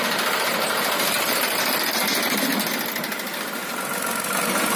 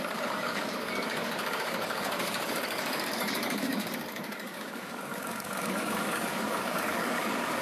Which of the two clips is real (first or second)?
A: first